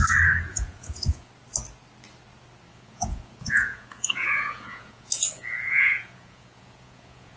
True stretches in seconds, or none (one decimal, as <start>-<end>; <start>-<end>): 0.0-0.5; 1.3-2.7